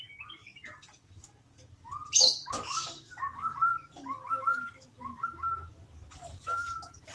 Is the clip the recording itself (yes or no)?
no